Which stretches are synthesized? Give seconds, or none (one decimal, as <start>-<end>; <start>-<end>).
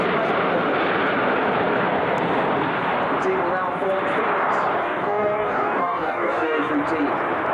4.8-6.7